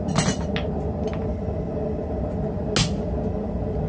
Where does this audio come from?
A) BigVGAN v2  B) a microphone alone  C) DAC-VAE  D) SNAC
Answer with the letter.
B